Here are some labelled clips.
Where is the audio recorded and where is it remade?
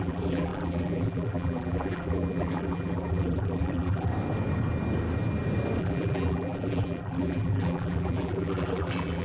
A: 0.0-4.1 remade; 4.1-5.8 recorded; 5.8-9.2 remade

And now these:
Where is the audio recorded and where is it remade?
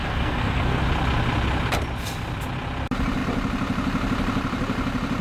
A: 0.0-0.8 remade; 0.8-5.2 recorded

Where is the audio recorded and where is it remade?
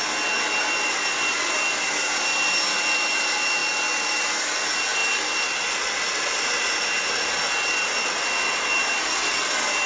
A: 0.0-9.9 recorded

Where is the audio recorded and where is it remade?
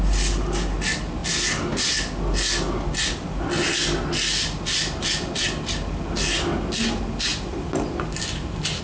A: 0.0-7.3 recorded; 7.3-8.8 remade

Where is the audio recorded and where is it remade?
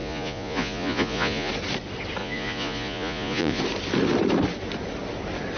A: 0.0-1.5 remade; 1.5-2.2 recorded; 2.2-3.6 remade; 3.6-5.6 recorded